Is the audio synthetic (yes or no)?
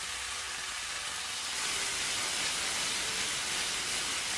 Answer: no